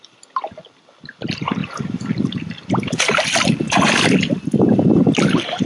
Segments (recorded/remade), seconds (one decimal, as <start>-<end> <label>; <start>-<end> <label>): 0.0-5.7 recorded